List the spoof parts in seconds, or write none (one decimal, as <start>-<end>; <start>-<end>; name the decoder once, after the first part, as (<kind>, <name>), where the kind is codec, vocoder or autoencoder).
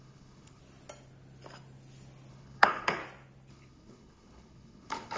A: 0.0-0.6 (codec, HILCodec); 2.3-3.0; 3.5-5.2